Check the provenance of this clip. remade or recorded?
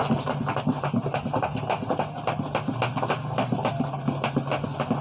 recorded